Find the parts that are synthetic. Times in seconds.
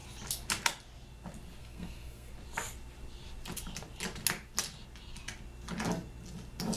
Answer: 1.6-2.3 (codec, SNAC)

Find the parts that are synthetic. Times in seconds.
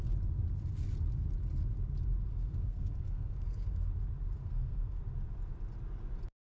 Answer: 2.3-3.9 (codec, SNAC); 4.4-5.0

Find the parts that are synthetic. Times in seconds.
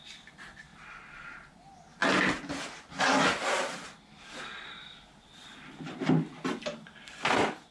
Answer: none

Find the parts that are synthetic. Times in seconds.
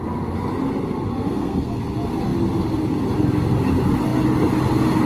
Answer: 1.1-1.8 (codec, SNAC)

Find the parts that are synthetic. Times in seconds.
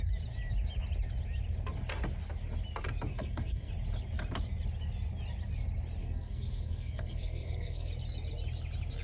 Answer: 3.1-3.7 (codec, SNAC); 6.0-7.9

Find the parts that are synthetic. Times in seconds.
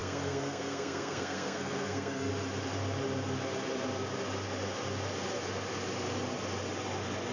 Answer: 0.0-2.3 (codec, SNAC)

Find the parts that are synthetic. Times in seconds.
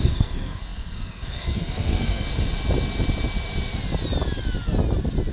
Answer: 0.0-2.3 (codec, SNAC)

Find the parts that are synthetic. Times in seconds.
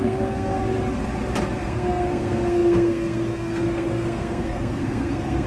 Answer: 0.0-0.6 (codec, SNAC); 1.6-5.5